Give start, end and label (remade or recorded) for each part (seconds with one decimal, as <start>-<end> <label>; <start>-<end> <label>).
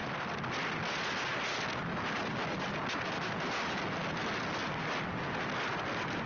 0.0-6.3 recorded